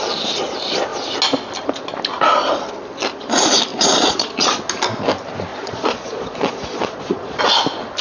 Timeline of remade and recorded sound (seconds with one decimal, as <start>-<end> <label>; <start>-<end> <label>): 0.0-3.7 recorded; 3.7-4.7 remade; 4.7-5.5 recorded; 5.5-7.4 remade; 7.4-8.0 recorded

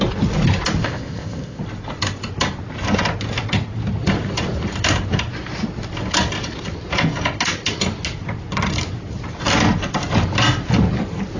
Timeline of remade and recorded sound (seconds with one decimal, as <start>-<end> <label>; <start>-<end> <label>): 0.0-0.8 recorded; 0.8-1.6 remade; 1.6-11.4 recorded

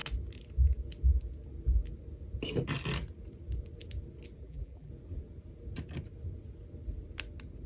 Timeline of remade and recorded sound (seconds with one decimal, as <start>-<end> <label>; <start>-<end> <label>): 0.0-4.4 recorded; 4.4-4.9 remade; 4.9-7.7 recorded

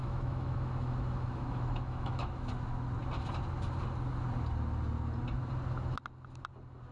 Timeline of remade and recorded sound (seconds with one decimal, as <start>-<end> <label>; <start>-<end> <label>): 0.0-2.5 remade; 2.5-6.9 recorded

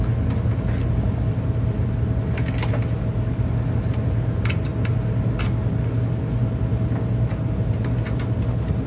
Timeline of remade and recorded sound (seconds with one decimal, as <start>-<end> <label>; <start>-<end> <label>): 0.0-8.9 recorded